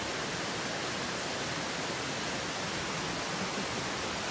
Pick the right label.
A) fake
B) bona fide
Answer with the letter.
B